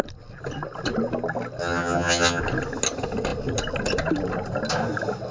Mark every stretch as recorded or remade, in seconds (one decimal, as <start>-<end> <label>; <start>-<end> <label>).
0.0-1.6 recorded; 1.6-2.4 remade; 2.4-5.3 recorded

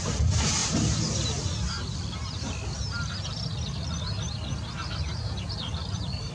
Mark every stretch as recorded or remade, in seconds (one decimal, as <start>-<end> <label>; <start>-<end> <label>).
0.0-5.2 recorded; 5.2-6.3 remade

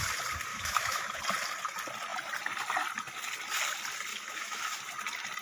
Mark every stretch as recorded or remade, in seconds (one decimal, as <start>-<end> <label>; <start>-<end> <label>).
0.0-0.5 recorded; 0.5-1.2 remade; 1.2-4.1 recorded; 4.1-4.8 remade; 4.8-5.4 recorded

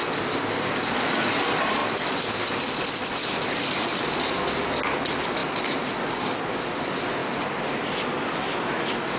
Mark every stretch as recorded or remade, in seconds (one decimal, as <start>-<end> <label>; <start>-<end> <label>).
0.0-1.8 remade; 1.8-3.8 recorded; 3.8-7.2 remade; 7.2-9.2 recorded

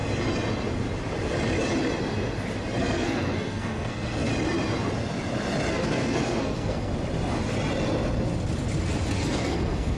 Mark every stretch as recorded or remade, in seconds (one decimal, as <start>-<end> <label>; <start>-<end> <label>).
0.0-2.8 recorded; 2.8-4.3 remade; 4.3-5.7 recorded; 5.7-6.9 remade; 6.9-9.1 recorded; 9.1-10.0 remade

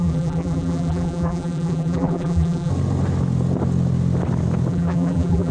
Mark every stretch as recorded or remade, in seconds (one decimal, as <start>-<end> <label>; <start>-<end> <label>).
0.0-2.7 remade; 2.7-4.7 recorded; 4.7-5.5 remade